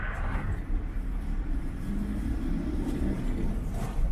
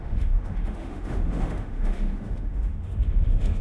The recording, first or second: first